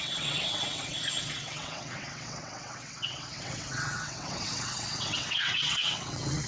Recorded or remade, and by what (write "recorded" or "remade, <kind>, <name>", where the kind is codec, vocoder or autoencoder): remade, vocoder, WaveNeXt